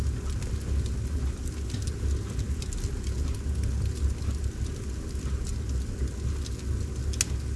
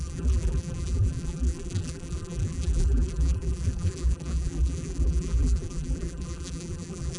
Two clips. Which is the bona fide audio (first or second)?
first